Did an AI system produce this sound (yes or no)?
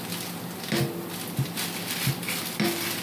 no